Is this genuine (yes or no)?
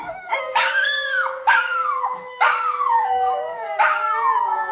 no